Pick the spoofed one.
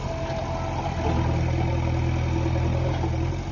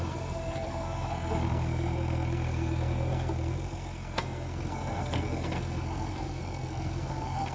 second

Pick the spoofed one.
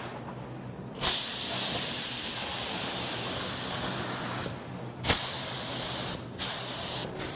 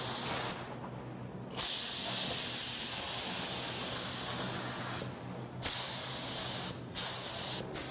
first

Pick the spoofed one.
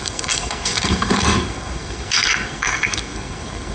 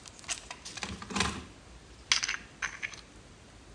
first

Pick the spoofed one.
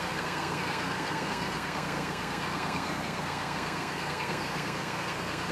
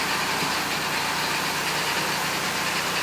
first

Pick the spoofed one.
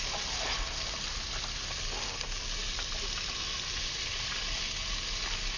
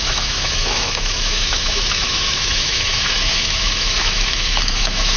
second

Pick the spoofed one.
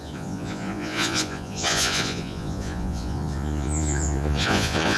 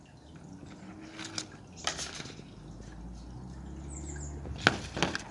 first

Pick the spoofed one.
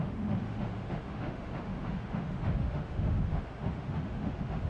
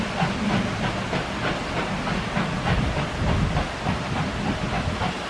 first